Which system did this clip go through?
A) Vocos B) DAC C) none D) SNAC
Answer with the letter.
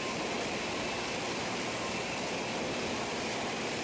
C